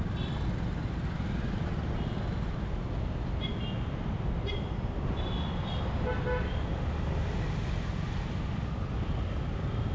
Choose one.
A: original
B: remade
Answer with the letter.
A